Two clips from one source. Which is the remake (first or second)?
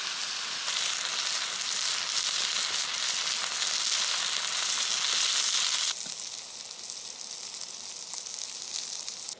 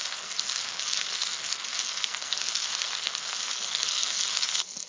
second